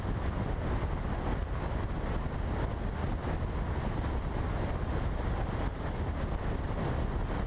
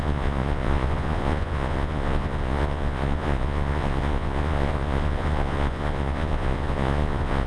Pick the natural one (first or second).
first